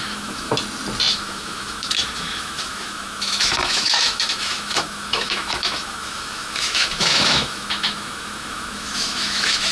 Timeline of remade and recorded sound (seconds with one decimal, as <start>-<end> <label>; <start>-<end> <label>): 0.0-0.5 remade; 0.5-1.1 recorded; 1.1-9.7 remade